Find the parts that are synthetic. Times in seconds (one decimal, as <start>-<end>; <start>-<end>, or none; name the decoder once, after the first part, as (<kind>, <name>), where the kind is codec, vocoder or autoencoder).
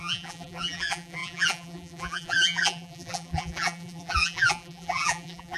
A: 0.0-5.6 (vocoder, BigVGAN v2)